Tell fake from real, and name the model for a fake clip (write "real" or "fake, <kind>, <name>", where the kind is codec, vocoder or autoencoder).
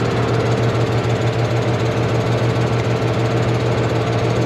real